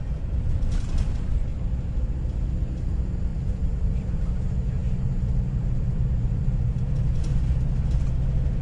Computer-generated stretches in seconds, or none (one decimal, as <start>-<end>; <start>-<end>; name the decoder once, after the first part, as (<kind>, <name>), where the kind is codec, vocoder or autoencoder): 0.0-1.5 (vocoder, BigVGAN v2); 2.6-7.3